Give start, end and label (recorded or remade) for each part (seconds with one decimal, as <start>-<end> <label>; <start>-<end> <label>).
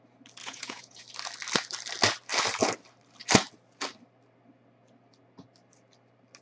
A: 0.0-0.4 recorded; 0.4-1.0 remade; 1.0-6.4 recorded